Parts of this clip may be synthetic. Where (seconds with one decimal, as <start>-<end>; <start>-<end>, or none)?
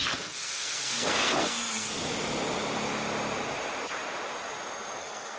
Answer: 0.0-1.9; 5.0-5.4